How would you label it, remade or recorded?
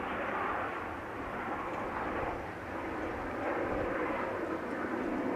recorded